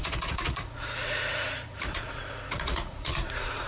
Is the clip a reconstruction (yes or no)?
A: yes